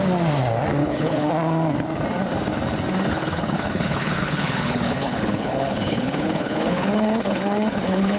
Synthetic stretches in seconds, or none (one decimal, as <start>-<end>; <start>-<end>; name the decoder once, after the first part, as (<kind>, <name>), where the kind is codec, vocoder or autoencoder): 0.8-1.3 (codec, HILCodec); 3.1-8.2